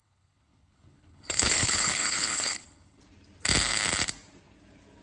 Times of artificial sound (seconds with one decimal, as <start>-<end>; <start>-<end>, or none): 0.0-3.0